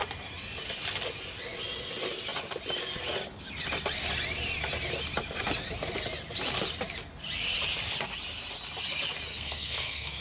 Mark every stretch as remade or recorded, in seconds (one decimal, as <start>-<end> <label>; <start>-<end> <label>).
0.0-9.3 recorded; 9.3-10.2 remade